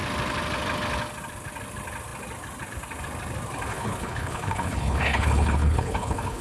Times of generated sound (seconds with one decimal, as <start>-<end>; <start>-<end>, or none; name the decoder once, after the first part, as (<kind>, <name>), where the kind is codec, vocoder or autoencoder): 3.7-6.4 (codec, HILCodec)